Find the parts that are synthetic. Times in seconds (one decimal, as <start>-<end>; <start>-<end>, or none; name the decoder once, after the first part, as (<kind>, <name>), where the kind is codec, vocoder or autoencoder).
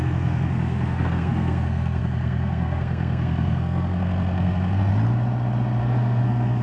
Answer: 0.0-4.9 (codec, SNAC); 5.8-6.6